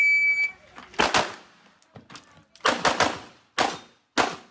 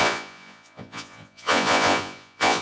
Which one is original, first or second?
first